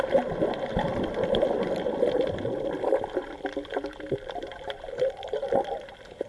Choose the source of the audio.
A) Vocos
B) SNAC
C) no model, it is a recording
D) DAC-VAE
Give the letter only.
C